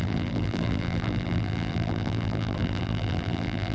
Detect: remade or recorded remade